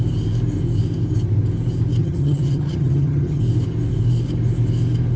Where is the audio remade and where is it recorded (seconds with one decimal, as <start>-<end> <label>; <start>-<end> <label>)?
0.0-2.0 recorded; 2.0-3.4 remade; 3.4-5.2 recorded